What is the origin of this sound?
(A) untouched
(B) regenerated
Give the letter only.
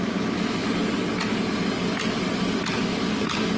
A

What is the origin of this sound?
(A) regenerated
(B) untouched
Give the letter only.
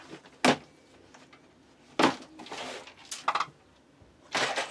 B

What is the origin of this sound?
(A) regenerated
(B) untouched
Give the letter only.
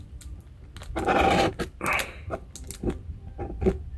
B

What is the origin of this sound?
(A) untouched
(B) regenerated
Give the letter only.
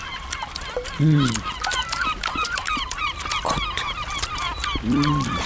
B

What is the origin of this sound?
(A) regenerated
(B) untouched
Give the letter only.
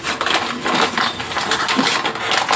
B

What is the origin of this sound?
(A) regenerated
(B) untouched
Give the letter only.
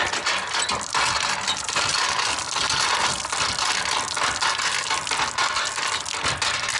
B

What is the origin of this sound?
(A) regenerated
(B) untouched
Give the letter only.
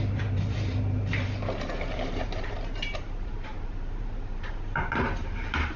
A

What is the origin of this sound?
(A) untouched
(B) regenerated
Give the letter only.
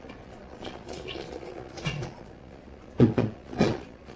B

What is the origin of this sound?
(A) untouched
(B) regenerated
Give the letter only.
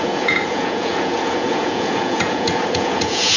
B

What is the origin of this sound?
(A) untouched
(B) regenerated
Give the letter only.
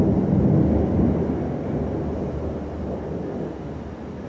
A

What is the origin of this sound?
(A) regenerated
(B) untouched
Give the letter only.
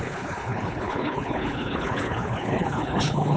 A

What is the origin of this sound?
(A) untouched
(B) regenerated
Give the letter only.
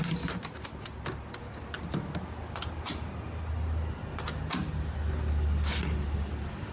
A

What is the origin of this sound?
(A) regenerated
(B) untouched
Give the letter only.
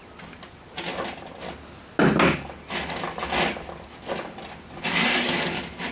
B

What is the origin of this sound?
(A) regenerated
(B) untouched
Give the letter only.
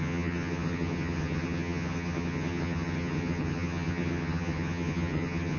A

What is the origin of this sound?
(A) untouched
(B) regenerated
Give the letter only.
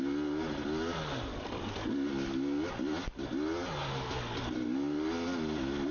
A